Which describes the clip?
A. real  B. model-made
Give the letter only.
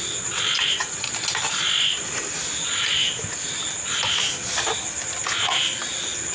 A